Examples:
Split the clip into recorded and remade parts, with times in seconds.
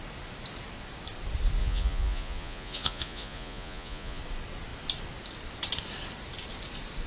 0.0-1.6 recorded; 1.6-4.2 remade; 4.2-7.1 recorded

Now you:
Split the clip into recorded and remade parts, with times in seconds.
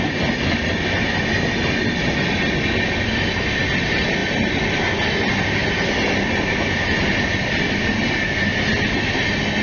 0.0-9.6 recorded